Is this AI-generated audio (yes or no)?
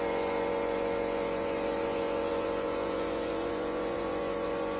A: yes